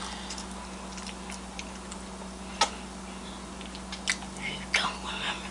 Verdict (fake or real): real